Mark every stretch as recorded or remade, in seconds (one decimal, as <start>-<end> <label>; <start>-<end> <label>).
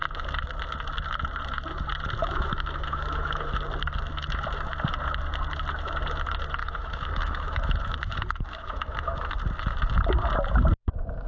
0.0-2.2 recorded; 2.2-3.5 remade; 3.5-6.6 recorded; 6.6-9.3 remade; 9.3-11.3 recorded